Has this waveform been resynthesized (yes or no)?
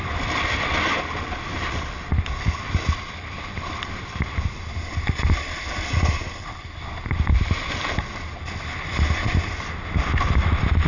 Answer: no